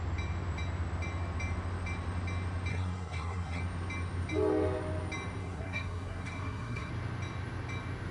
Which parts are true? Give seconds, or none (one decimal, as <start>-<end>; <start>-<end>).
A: 0.0-2.7; 3.6-5.4; 6.9-8.1